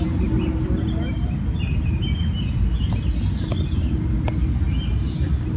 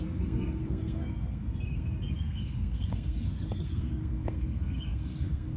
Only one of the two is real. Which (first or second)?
first